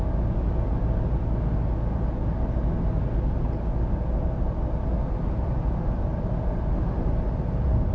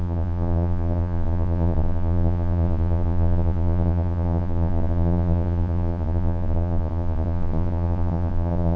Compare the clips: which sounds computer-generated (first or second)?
second